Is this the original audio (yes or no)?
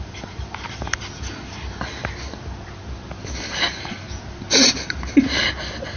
yes